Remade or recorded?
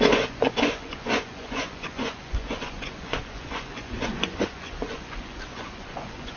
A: remade